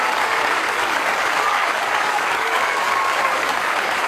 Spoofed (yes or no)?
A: yes